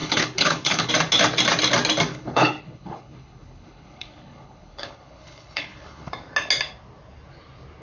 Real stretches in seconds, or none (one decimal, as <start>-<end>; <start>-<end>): 0.9-2.1; 6.1-7.8